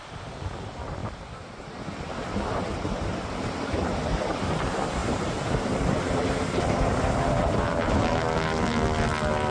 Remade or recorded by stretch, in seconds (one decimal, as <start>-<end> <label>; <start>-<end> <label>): 0.0-5.0 recorded; 5.0-8.0 remade; 8.0-9.5 recorded